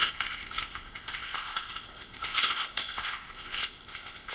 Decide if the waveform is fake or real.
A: fake